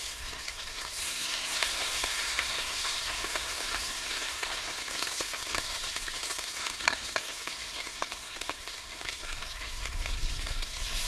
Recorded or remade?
remade